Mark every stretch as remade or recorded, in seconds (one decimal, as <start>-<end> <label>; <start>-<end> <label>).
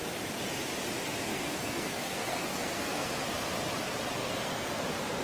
0.0-1.3 recorded; 1.3-3.2 remade; 3.2-4.2 recorded; 4.2-4.8 remade; 4.8-5.2 recorded